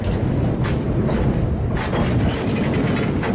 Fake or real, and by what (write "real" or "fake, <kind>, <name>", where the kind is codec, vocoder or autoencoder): real